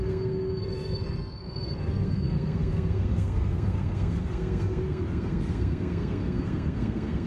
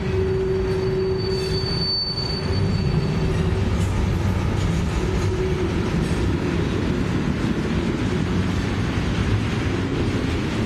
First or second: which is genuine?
second